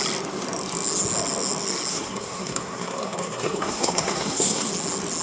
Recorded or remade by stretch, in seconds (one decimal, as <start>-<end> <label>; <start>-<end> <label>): 0.0-1.9 recorded; 1.9-4.7 remade; 4.7-5.2 recorded